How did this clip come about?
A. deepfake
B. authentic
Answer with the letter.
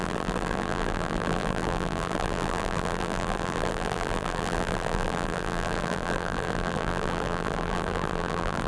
A